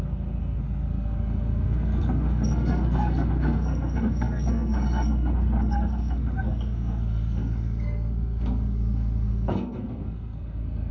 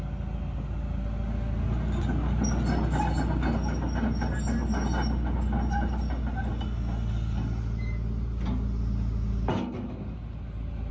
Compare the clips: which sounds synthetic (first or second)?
first